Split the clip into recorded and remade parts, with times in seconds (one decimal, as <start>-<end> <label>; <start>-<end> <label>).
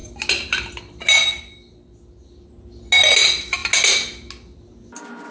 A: 0.0-5.3 recorded